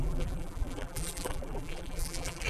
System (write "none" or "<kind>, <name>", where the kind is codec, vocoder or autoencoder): vocoder, BigVGAN v2